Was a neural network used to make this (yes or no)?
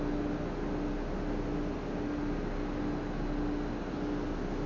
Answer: no